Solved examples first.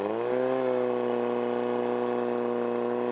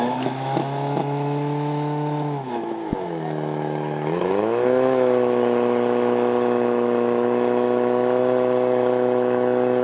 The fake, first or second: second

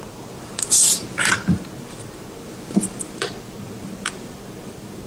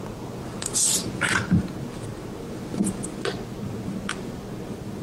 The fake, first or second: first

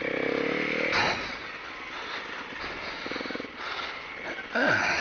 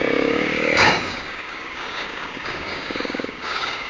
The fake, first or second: second